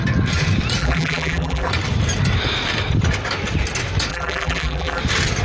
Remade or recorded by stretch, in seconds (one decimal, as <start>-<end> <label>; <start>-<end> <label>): 0.0-0.8 recorded; 0.8-1.7 remade; 1.7-4.1 recorded; 4.1-5.0 remade; 5.0-5.4 recorded